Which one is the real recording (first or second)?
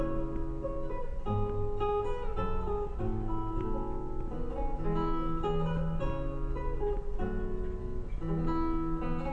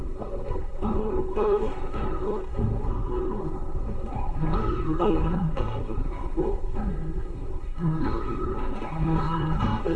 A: first